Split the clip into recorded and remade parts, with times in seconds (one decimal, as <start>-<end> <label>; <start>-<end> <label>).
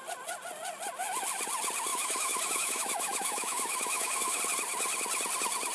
0.0-1.9 recorded; 1.9-4.4 remade; 4.4-5.7 recorded